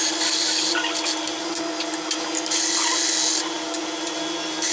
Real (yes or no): yes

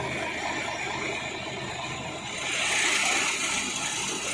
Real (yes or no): yes